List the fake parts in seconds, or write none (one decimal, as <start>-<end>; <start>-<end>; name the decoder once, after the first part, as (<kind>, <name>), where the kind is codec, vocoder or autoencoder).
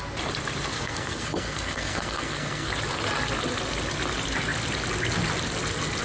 0.7-2.7 (codec, SNAC)